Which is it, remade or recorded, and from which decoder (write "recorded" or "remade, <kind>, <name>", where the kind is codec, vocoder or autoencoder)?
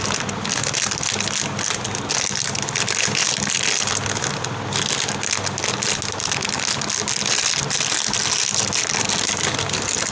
recorded